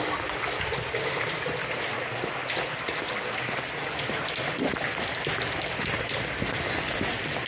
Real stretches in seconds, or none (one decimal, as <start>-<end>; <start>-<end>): 0.0-7.5